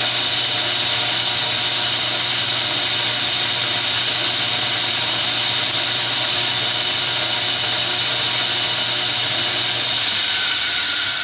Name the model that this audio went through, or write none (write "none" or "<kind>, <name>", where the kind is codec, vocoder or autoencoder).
none